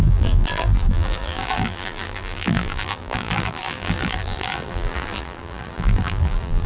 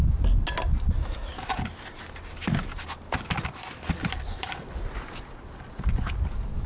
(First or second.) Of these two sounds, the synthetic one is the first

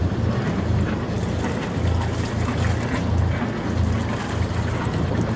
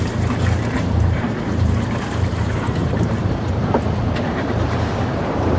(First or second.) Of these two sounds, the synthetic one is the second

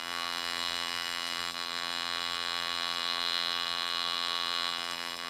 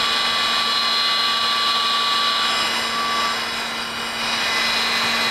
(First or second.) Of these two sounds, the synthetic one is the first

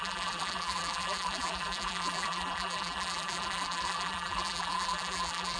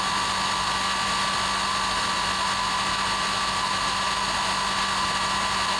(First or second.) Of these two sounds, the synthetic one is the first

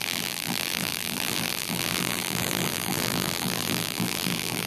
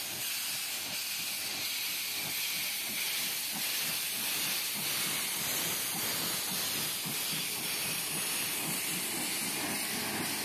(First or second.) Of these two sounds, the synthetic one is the first